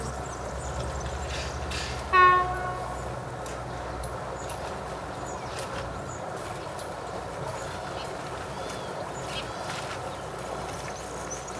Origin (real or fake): real